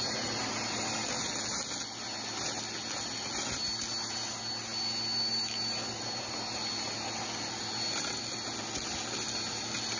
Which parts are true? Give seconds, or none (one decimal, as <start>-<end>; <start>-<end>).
0.0-10.0